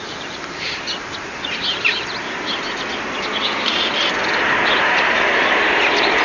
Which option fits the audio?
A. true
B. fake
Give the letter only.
A